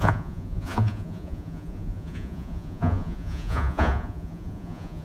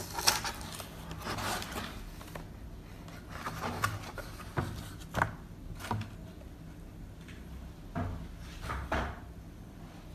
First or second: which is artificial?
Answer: first